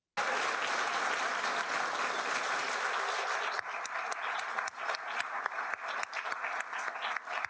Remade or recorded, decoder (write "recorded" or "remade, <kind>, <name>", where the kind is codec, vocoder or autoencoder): recorded